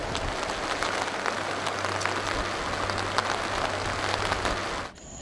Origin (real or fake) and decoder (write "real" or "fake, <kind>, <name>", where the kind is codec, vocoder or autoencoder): real